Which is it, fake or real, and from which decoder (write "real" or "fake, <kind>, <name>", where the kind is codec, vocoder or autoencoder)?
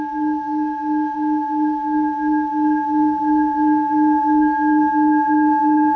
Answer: fake, codec, SNAC